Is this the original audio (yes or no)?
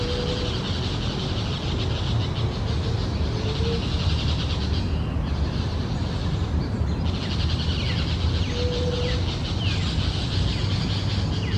yes